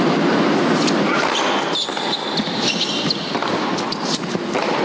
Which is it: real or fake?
real